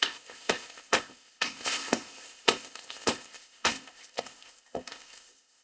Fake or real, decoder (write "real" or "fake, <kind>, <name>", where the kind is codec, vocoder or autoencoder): fake, codec, ZipCodec